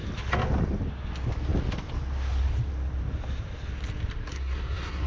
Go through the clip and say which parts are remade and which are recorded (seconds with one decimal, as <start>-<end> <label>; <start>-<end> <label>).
0.0-4.3 recorded; 4.3-5.1 remade